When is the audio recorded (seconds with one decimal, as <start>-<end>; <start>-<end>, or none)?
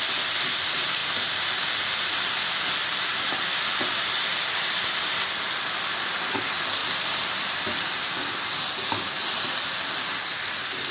0.0-6.8; 7.4-10.9